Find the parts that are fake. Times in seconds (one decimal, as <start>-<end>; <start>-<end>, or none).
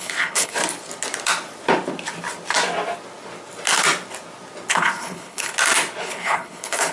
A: 0.0-0.6; 4.7-5.5; 6.0-6.9